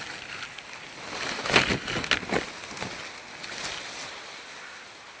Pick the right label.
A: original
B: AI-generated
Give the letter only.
A